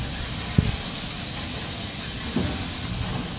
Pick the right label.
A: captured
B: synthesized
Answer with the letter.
A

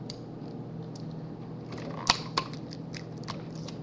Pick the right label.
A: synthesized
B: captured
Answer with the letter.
B